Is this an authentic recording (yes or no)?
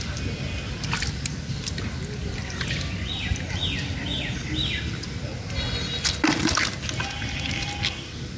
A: yes